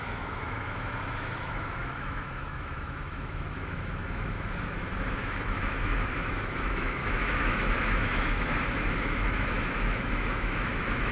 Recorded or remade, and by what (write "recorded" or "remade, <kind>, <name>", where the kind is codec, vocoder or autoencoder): remade, autoencoder, DAC-VAE